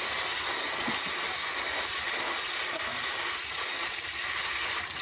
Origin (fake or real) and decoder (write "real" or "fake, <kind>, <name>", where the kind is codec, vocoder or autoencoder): real